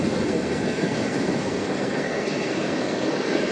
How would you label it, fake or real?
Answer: fake